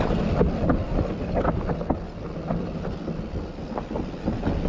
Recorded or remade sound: recorded